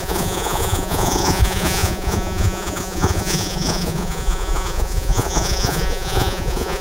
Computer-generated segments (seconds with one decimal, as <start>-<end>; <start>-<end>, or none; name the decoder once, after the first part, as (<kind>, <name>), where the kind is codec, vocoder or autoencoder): 0.0-6.8 (vocoder, Vocos)